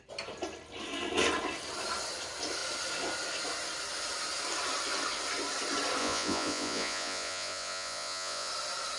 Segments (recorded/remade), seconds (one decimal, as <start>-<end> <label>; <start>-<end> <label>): 0.0-6.0 recorded; 6.0-8.5 remade; 8.5-9.0 recorded